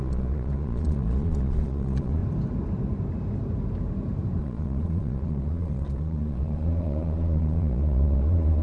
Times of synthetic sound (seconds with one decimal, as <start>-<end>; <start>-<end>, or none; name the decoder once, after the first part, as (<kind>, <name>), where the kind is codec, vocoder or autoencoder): 0.0-2.2 (vocoder, Vocos); 4.4-8.6